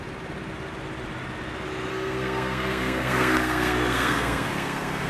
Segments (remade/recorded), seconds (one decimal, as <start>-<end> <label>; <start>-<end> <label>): 0.0-1.9 recorded; 1.9-5.1 remade